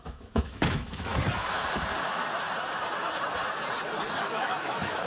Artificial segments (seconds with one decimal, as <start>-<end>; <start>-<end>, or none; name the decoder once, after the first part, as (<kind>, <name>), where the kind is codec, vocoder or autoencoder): 0.0-1.1 (autoencoder, DAC-VAE); 4.2-5.1